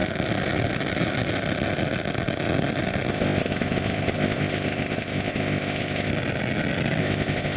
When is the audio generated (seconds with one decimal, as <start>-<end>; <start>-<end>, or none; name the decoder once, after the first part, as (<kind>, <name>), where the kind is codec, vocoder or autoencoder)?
3.1-6.1 (codec, ZipCodec); 7.0-7.6